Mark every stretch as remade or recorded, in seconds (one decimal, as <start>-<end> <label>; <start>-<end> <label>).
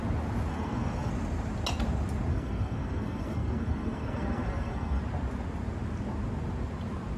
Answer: 0.0-0.5 recorded; 0.5-1.1 remade; 1.1-2.3 recorded; 2.3-5.0 remade; 5.0-7.2 recorded